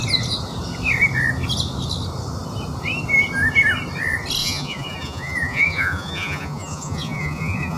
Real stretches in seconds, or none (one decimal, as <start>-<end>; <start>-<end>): 0.0-4.4